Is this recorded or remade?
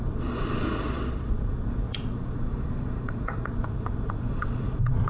remade